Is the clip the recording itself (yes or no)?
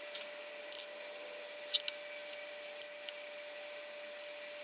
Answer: yes